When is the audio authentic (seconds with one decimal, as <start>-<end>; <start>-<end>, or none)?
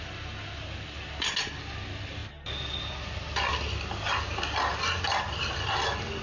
0.0-6.2